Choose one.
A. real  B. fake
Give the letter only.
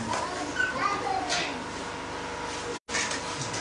A